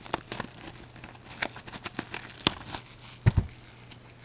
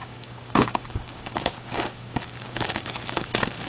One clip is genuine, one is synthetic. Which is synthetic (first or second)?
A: second